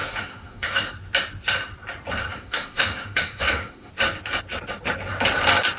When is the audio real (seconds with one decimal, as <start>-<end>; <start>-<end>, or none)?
0.9-2.3; 3.9-5.8